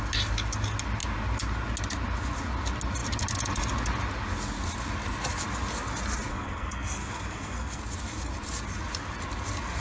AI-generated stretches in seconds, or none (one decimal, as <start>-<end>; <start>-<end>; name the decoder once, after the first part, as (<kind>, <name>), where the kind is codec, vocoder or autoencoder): 6.3-7.8 (codec, SNAC)